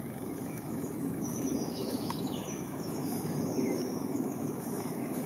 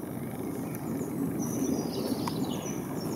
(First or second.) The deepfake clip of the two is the first